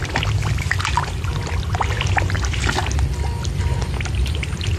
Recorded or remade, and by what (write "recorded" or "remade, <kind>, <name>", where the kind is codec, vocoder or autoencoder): recorded